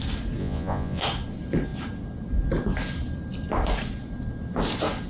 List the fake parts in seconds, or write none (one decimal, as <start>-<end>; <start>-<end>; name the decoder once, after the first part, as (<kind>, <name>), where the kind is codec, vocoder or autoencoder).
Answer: 0.4-1.0 (vocoder, Vocos)